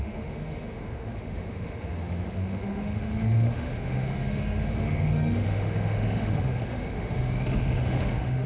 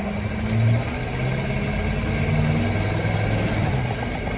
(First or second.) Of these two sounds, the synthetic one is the first